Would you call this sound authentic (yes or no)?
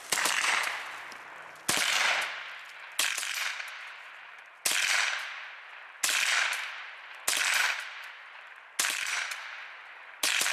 yes